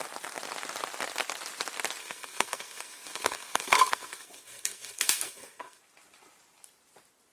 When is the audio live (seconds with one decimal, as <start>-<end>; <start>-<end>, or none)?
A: 0.0-2.0; 5.8-7.3